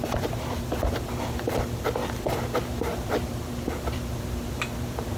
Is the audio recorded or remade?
remade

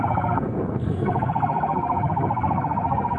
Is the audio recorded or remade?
remade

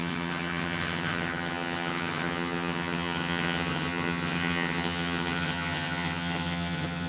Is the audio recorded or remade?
remade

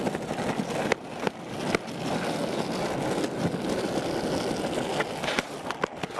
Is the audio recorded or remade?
recorded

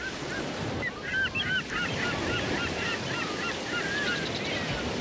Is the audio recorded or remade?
recorded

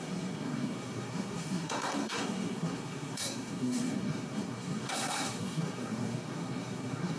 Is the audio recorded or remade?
remade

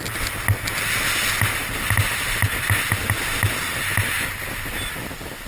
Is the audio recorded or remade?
recorded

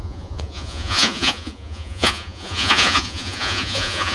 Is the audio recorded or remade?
remade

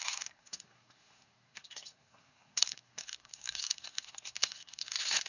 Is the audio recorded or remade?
remade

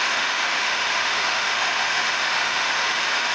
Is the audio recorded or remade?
remade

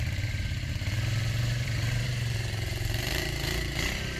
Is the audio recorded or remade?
remade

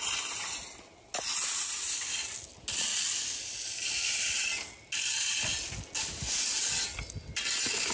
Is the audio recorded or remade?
recorded